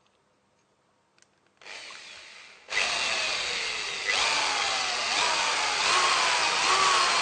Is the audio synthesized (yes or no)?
no